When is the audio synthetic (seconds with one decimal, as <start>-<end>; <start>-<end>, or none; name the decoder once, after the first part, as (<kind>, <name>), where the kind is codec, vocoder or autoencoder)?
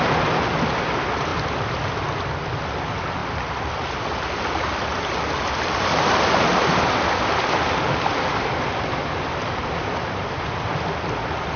1.3-2.5 (vocoder, BigVGAN v2); 6.5-10.7